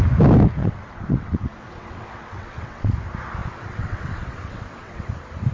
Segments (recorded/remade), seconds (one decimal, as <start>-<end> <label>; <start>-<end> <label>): 0.0-0.6 recorded; 0.6-2.9 remade; 2.9-3.4 recorded; 3.4-5.1 remade; 5.1-5.5 recorded